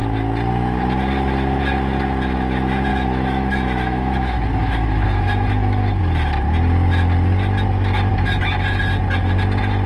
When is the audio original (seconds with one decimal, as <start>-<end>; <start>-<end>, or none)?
0.0-2.9; 6.0-9.9